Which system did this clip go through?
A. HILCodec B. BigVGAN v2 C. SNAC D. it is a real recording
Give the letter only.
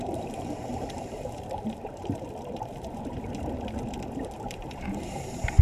B